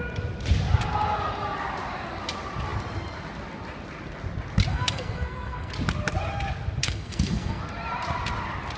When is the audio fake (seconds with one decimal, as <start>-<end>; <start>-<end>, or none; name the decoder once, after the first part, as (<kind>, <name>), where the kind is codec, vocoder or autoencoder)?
4.7-5.7 (codec, SNAC); 6.8-7.6